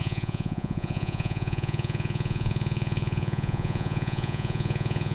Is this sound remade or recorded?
remade